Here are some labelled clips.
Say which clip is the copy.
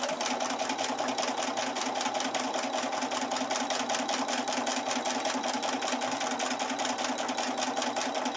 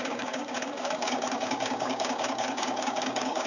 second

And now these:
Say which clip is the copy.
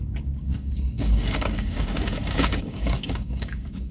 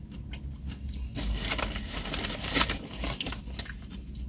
first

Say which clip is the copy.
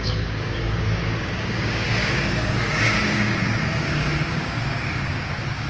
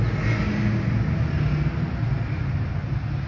first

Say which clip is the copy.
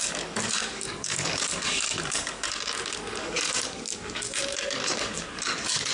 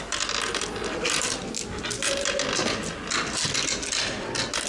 first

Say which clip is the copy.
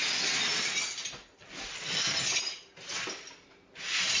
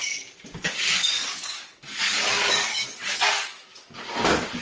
second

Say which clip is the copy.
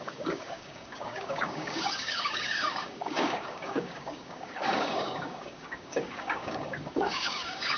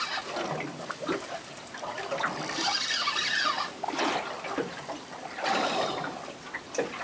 first